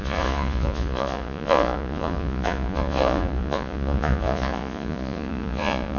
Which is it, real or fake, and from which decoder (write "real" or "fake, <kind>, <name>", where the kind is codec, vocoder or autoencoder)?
fake, vocoder, Vocos